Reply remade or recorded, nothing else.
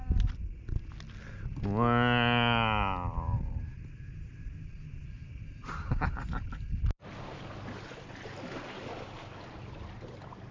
recorded